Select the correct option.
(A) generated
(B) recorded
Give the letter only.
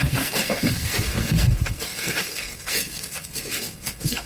A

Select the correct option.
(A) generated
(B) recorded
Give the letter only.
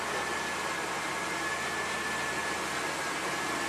B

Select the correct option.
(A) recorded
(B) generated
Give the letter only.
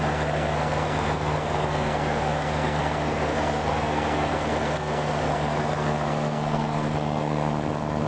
B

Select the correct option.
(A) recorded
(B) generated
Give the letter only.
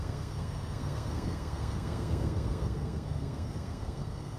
B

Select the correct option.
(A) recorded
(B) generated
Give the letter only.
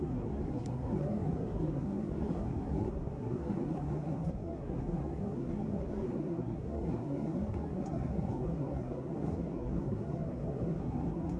B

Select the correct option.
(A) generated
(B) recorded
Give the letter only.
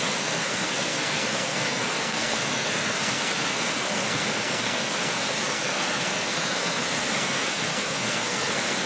A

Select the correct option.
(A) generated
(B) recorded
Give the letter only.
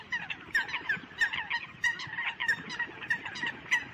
B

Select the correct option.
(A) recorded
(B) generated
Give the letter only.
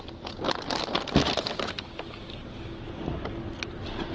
A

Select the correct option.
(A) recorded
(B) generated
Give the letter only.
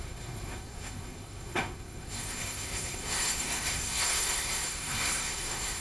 B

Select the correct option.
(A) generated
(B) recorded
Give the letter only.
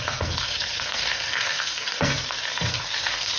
A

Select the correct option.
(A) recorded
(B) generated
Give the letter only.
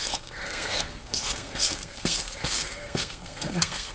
B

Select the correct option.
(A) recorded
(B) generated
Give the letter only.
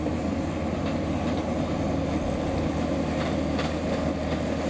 A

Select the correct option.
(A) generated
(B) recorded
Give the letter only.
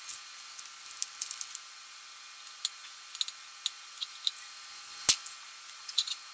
B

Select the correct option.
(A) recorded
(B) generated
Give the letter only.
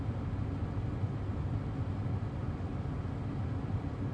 A